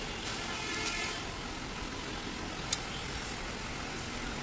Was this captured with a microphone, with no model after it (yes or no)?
yes